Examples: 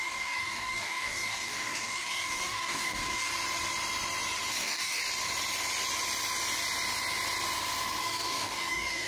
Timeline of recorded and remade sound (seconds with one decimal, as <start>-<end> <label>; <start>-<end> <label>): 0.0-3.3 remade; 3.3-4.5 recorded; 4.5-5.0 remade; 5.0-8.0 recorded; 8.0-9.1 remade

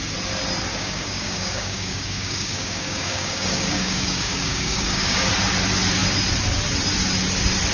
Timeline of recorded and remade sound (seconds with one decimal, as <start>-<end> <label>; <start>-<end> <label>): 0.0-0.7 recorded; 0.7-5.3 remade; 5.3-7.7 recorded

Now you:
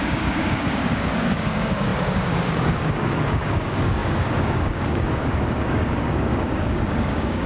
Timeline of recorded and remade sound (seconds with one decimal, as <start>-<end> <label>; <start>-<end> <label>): 0.0-7.5 remade